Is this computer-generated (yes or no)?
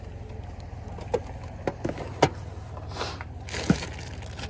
no